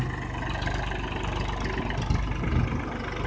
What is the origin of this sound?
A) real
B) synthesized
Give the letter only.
A